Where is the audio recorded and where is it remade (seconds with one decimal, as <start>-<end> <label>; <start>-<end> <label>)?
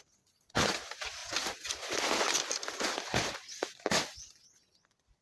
0.0-5.2 recorded